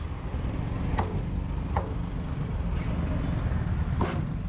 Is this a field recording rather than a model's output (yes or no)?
yes